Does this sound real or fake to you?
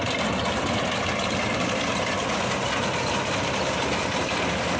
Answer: real